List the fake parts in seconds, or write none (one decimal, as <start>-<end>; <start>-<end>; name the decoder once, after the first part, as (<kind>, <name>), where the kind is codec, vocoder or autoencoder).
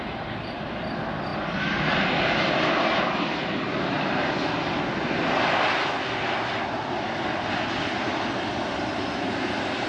none